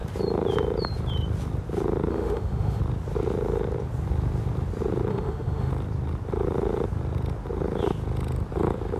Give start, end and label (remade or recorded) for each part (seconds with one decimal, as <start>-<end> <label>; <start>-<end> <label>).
0.0-2.1 recorded; 2.1-2.8 remade; 2.8-5.1 recorded; 5.1-5.7 remade; 5.7-9.0 recorded